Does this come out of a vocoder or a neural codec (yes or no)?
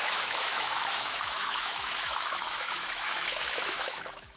yes